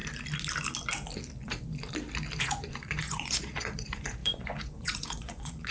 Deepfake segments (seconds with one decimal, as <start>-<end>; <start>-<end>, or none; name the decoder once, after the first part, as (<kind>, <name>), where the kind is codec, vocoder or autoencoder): 2.4-5.7 (vocoder, Vocos)